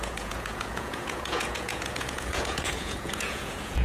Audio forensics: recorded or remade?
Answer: remade